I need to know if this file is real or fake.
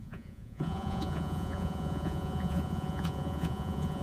fake